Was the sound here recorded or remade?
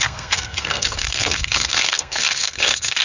remade